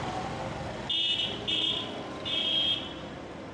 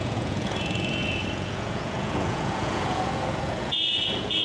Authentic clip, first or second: first